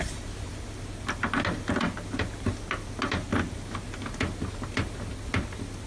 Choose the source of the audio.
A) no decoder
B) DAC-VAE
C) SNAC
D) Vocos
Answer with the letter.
A